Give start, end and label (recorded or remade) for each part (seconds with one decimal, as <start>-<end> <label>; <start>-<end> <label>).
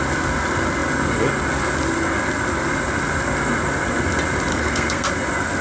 0.0-4.5 recorded; 4.5-5.1 remade; 5.1-5.6 recorded